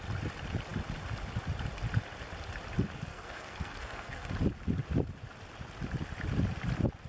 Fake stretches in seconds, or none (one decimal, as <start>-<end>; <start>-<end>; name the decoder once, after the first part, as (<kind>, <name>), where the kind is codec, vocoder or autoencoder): 3.1-4.3 (codec, SNAC)